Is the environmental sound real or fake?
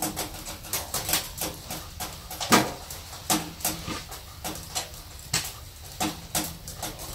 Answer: real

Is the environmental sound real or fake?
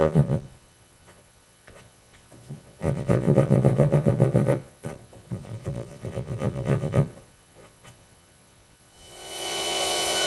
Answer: fake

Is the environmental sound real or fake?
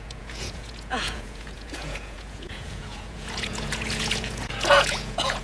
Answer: fake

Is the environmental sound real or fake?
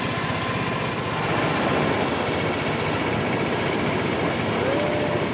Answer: real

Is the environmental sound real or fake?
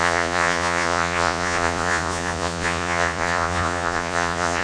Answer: fake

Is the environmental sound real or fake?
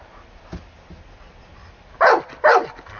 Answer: real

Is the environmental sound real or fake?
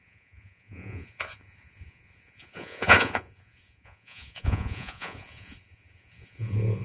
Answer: fake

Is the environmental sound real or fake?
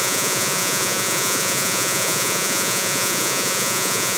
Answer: fake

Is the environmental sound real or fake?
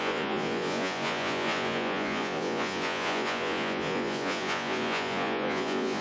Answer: fake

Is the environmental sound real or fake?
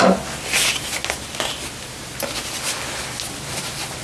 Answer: real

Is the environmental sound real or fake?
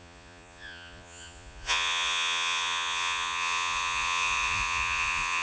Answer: fake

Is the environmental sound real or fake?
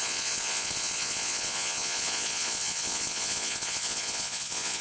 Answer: fake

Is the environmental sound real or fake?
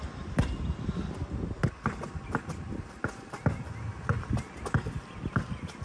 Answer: real